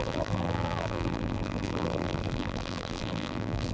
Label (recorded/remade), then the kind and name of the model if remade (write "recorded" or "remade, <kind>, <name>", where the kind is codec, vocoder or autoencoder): remade, vocoder, BigVGAN v2